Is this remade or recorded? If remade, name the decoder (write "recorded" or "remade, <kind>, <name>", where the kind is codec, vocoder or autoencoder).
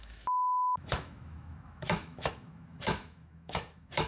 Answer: remade, autoencoder, DAC-VAE